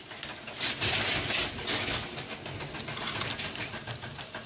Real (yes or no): yes